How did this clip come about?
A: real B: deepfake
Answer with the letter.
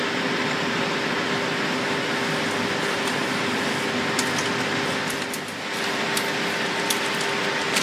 A